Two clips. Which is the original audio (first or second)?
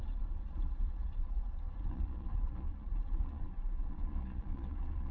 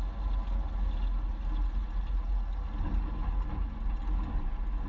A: second